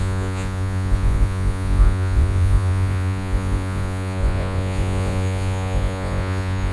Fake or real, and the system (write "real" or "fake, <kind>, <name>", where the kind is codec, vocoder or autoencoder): fake, vocoder, Vocos